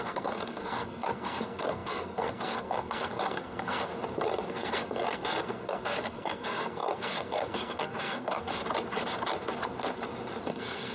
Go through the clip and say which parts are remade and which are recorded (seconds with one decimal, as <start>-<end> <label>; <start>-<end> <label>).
0.0-3.9 remade; 3.9-4.5 recorded; 4.5-8.6 remade; 8.6-10.5 recorded; 10.5-10.9 remade